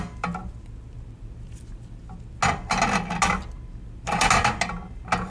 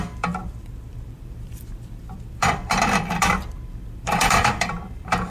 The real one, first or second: first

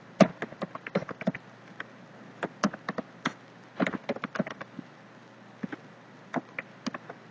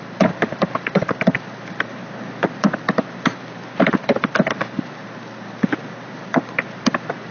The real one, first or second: first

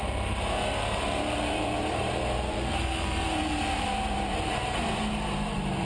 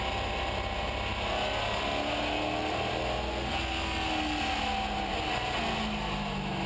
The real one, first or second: second